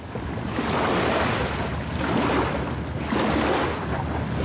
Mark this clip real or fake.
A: real